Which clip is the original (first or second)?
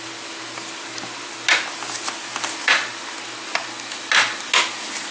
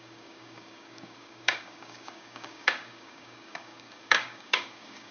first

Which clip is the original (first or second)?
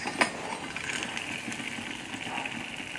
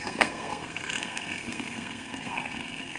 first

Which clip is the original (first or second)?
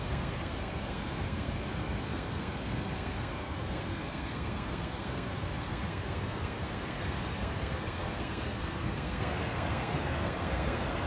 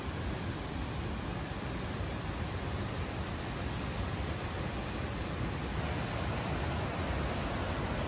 second